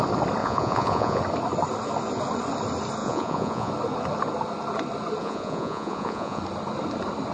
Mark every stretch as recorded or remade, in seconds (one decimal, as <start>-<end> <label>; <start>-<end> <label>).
0.0-0.4 recorded; 0.4-1.2 remade; 1.2-3.0 recorded; 3.0-3.7 remade; 3.7-5.2 recorded; 5.2-6.4 remade; 6.4-7.3 recorded